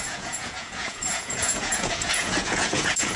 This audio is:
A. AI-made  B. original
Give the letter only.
A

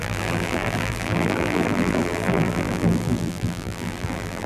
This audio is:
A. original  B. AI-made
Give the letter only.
B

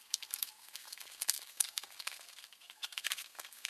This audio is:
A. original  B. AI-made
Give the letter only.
B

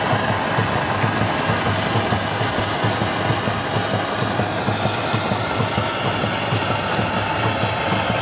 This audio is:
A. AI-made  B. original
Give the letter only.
B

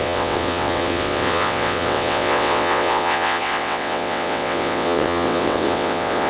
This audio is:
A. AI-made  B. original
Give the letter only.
A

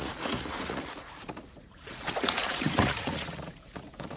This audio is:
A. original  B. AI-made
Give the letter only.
B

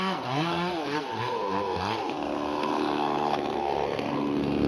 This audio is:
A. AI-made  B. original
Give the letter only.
A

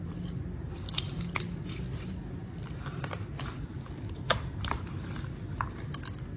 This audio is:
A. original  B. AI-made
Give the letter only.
A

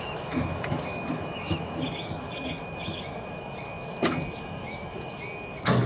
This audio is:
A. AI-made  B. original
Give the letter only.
A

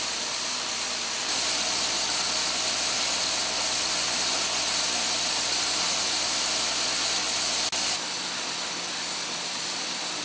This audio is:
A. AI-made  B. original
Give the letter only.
B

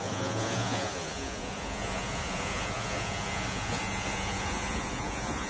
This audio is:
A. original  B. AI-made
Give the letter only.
B